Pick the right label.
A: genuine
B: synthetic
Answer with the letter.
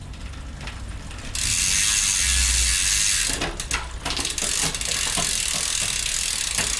A